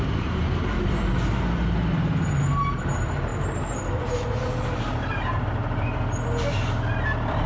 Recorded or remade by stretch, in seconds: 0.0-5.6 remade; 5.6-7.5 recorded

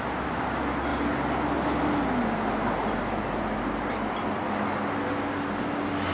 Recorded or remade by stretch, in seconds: 0.0-6.1 recorded

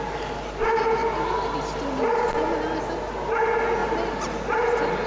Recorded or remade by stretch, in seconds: 0.0-5.1 recorded